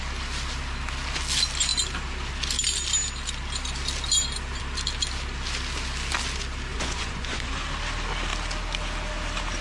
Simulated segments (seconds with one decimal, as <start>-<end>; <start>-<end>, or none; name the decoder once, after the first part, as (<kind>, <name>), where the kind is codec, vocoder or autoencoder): 6.7-7.5 (vocoder, Vocos)